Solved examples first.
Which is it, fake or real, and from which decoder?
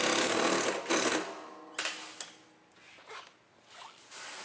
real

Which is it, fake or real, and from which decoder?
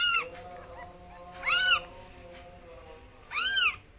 real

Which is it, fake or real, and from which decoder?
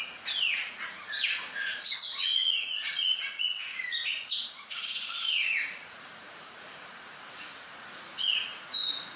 fake, vocoder, Vocos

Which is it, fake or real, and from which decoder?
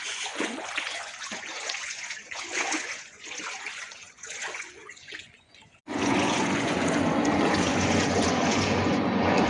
fake, vocoder, Vocos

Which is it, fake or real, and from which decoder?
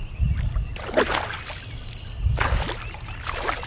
real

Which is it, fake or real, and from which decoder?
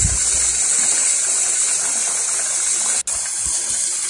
real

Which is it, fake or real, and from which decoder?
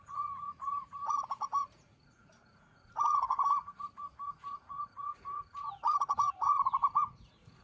fake, vocoder, Vocos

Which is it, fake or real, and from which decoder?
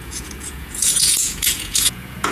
fake, vocoder, Vocos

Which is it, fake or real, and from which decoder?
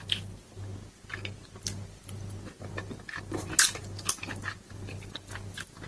real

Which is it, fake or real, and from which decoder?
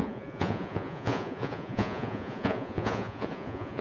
fake, vocoder, Vocos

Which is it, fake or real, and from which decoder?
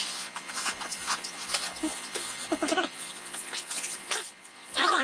fake, vocoder, Vocos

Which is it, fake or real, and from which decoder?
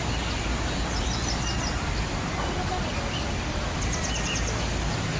real